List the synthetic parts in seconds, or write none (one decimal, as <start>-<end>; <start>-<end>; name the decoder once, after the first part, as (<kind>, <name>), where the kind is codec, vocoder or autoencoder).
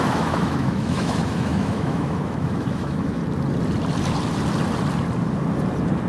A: 0.0-3.2 (autoencoder, DAC-VAE)